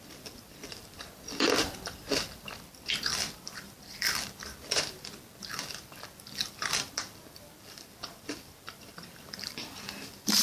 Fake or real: fake